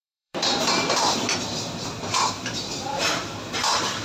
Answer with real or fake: fake